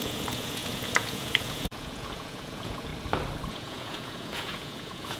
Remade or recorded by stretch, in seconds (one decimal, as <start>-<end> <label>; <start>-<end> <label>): 0.0-2.9 remade; 2.9-3.5 recorded; 3.5-5.2 remade